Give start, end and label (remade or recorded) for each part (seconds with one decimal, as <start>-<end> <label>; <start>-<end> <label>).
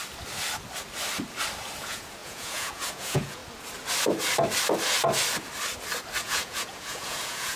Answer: 0.0-1.8 recorded; 1.8-3.4 remade; 3.4-6.2 recorded; 6.2-7.6 remade